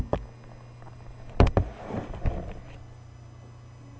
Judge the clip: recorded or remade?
recorded